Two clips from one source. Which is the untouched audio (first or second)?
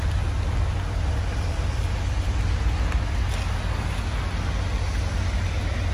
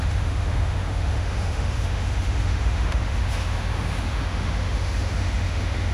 first